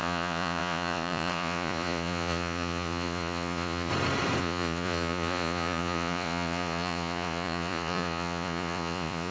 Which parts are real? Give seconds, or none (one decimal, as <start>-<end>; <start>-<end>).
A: 3.9-4.4